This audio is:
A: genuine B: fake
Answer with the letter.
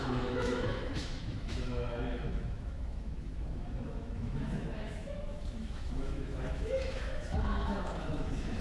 B